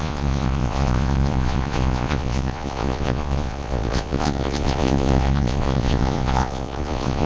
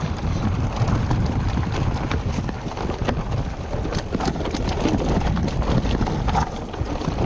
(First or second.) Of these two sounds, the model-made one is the first